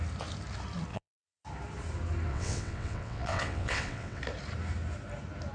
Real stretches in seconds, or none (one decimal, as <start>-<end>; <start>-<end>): 0.0-0.9; 1.4-2.3; 4.2-5.5